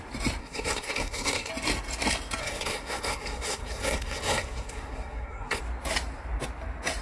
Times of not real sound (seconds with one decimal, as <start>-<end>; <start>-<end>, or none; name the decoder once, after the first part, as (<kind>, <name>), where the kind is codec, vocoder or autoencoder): 0.4-1.5 (codec, SNAC); 2.4-5.6